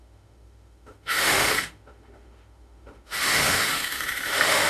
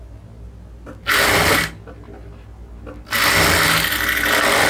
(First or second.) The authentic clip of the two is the second